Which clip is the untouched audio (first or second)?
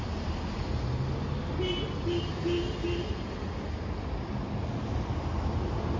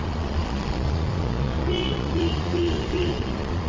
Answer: first